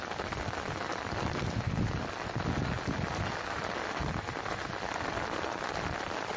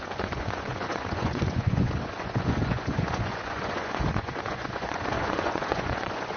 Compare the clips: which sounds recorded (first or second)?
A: first